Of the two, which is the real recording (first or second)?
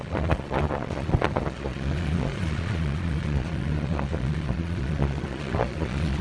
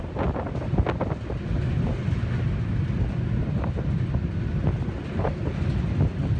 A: second